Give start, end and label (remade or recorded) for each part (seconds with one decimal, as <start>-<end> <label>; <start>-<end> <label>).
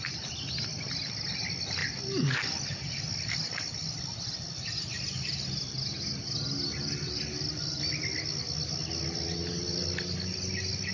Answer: 0.0-10.9 recorded